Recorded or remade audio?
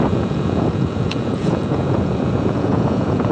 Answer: remade